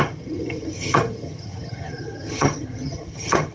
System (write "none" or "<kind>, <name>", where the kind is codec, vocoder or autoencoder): vocoder, HiFi-GAN